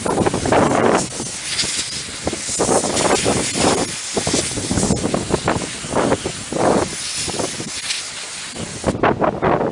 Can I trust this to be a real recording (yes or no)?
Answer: yes